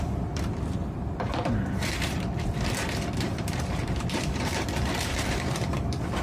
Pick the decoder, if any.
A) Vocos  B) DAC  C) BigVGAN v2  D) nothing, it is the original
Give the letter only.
C